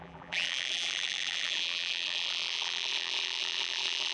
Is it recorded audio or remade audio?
remade